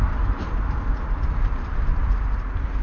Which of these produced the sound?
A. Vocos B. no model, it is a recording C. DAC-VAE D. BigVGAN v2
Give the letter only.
B